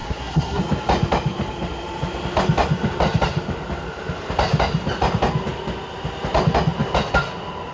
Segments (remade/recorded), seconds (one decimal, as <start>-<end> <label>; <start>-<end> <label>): 0.0-0.6 remade; 0.6-7.7 recorded